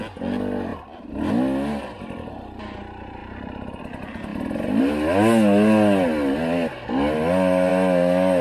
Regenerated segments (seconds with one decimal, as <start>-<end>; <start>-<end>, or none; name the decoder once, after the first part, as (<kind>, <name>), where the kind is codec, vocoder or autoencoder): 3.2-3.8 (vocoder, BigVGAN v2)